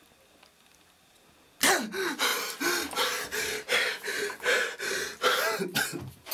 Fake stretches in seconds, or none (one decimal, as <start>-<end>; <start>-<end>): none